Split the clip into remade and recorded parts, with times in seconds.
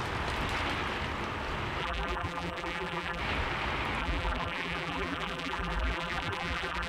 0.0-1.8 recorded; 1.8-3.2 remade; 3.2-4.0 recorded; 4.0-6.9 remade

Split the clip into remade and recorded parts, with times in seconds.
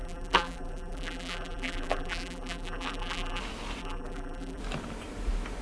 0.0-3.4 remade; 3.4-3.8 recorded; 3.8-4.6 remade; 4.6-5.6 recorded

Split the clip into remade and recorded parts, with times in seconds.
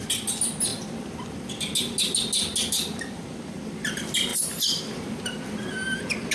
0.0-6.3 recorded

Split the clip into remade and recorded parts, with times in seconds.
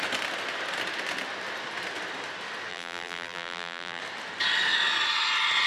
0.0-2.7 recorded; 2.7-4.0 remade; 4.0-5.7 recorded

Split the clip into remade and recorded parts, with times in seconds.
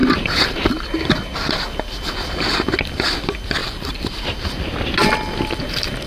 0.0-0.9 remade; 0.9-3.6 recorded; 3.6-4.2 remade; 4.2-6.1 recorded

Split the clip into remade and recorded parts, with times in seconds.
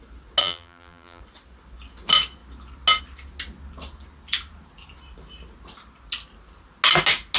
0.0-0.4 recorded; 0.4-1.2 remade; 1.2-7.4 recorded